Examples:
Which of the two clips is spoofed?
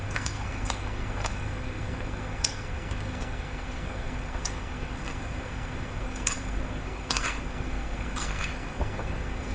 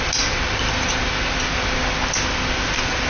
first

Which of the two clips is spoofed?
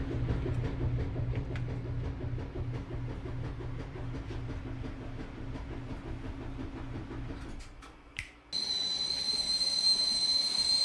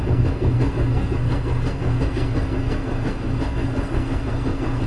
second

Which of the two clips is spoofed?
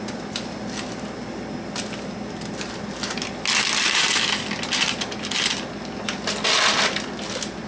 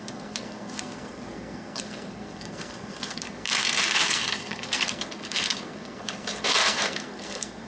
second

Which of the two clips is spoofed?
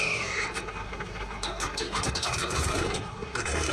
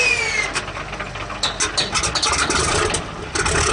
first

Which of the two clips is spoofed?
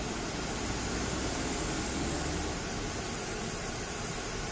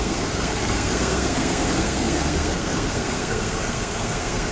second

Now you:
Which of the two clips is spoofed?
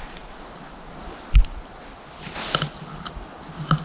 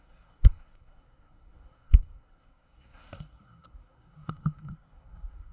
second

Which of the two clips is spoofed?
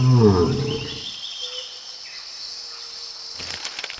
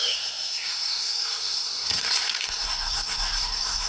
second